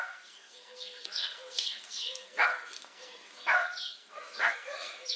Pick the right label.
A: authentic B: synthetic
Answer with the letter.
B